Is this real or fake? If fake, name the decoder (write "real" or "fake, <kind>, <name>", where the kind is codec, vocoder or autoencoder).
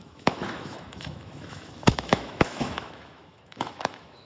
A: fake, autoencoder, DAC-VAE